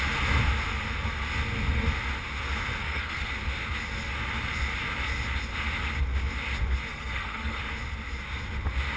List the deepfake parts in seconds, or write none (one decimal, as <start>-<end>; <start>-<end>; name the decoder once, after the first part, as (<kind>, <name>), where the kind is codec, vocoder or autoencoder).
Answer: 2.8-3.3 (codec, SNAC); 6.9-7.6

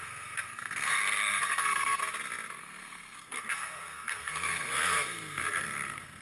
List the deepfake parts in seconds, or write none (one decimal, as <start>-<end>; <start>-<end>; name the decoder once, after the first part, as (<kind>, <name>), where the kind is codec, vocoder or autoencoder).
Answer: 0.0-2.0 (codec, SNAC); 2.6-6.2

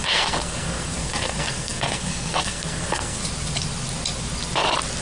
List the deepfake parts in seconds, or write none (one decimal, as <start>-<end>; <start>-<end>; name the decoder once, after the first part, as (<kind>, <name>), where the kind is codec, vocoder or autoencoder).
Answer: 0.0-3.2 (codec, SNAC)

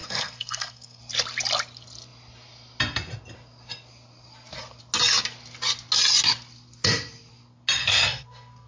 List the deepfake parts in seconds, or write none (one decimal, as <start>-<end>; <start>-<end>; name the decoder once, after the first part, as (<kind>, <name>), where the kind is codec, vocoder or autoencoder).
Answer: 0.0-1.0 (codec, SNAC); 7.8-8.7

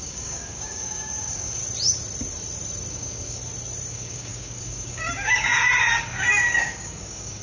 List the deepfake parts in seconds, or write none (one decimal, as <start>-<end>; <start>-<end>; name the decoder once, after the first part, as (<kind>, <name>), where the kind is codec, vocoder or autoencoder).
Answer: 0.0-1.6 (codec, DAC); 2.9-3.4; 3.9-5.5; 6.0-7.4

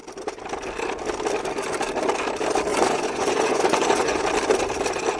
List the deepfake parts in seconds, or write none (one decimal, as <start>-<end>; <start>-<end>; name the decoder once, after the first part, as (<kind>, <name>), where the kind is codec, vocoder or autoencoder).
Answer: 2.7-4.2 (vocoder, Vocos)

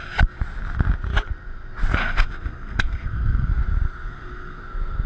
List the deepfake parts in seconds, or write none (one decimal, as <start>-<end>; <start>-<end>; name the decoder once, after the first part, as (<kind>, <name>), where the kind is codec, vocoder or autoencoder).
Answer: 2.0-3.5 (codec, SNAC); 4.1-4.6